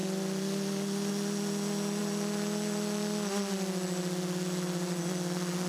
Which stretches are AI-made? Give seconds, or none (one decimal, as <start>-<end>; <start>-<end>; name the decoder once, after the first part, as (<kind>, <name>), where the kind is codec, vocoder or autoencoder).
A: 0.0-1.1 (vocoder, BigVGAN v2)